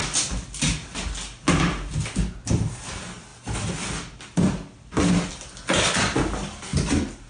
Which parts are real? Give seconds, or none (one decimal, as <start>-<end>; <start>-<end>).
0.0-7.3